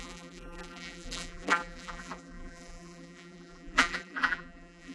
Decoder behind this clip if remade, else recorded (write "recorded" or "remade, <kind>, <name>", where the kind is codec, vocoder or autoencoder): remade, vocoder, BigVGAN v2